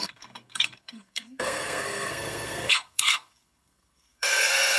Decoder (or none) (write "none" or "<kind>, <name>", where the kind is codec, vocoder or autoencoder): codec, SNAC